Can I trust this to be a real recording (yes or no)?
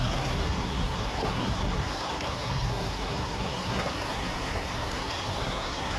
no